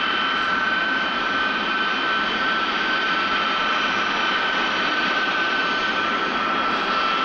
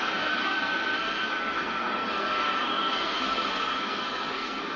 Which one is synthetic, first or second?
second